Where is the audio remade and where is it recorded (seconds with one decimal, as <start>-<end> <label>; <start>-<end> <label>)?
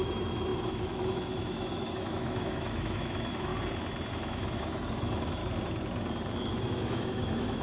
0.0-3.5 remade; 3.5-4.1 recorded; 4.1-5.4 remade; 5.4-6.5 recorded; 6.5-7.6 remade